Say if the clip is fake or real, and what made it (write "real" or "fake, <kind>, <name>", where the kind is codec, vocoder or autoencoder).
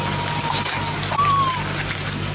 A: real